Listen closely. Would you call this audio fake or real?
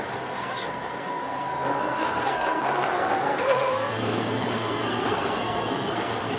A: fake